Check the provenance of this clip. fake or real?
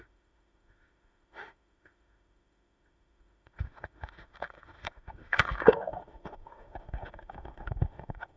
fake